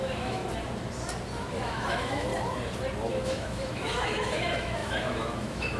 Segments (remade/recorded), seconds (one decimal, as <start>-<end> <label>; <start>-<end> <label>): 0.0-0.4 remade; 0.4-1.5 recorded; 1.5-2.3 remade; 2.3-3.1 recorded; 3.1-5.8 remade